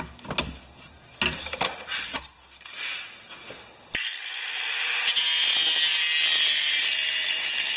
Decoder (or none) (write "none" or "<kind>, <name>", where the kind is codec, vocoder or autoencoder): none